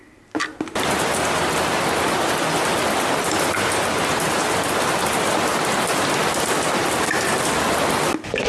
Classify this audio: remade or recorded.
recorded